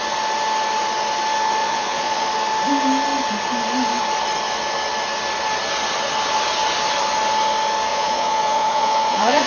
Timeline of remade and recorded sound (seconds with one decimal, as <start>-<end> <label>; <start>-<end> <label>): 0.0-1.6 recorded; 1.6-2.3 remade; 2.3-7.9 recorded; 7.9-9.5 remade